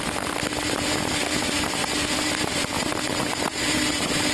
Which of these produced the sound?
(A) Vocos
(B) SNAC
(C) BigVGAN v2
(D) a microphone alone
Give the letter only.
D